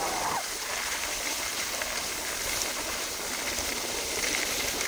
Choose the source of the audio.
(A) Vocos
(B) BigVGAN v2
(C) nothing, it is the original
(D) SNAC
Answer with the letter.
C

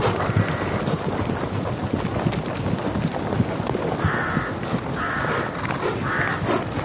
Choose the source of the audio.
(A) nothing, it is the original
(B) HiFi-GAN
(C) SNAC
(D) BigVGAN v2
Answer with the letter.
A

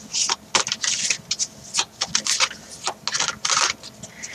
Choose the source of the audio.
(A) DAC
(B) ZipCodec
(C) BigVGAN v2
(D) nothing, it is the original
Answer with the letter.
D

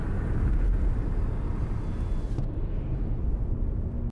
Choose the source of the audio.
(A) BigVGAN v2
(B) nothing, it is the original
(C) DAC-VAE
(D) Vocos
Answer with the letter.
B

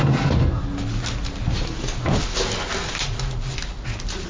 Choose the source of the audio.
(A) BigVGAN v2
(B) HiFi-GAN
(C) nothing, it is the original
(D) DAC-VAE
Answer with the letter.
C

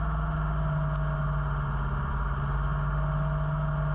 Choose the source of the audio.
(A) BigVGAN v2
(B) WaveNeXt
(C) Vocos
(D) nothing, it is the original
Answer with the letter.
D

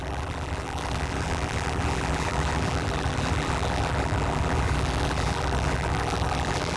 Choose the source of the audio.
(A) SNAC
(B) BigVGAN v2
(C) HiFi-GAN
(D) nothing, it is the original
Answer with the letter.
B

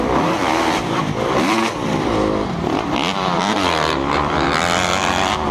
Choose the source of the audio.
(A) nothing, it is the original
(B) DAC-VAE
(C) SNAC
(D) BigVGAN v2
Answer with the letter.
D